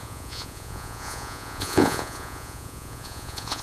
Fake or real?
fake